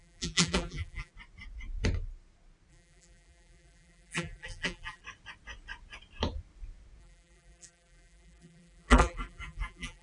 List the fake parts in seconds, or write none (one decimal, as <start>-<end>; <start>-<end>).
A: 0.0-1.1; 2.7-5.0; 7.0-10.0